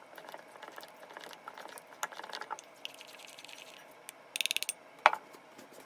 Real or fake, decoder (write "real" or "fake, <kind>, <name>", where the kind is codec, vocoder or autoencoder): real